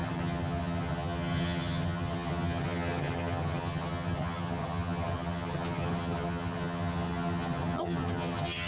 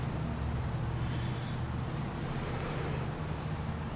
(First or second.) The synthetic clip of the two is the first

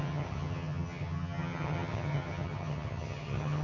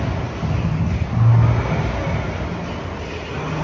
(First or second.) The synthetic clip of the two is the first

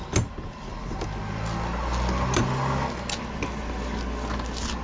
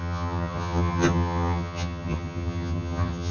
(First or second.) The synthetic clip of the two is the second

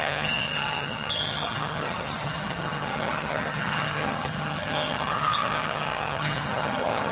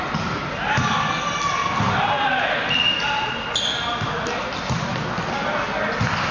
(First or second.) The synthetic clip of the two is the first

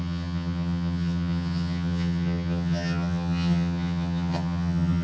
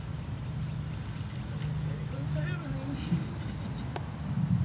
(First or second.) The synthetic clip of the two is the first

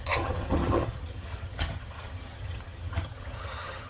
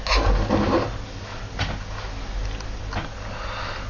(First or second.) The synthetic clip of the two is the first